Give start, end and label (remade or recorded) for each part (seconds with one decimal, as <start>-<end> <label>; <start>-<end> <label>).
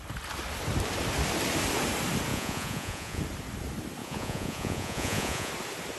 0.0-2.3 recorded; 2.3-3.2 remade; 3.2-4.0 recorded; 4.0-5.5 remade; 5.5-6.0 recorded